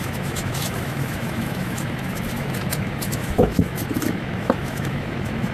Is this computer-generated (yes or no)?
yes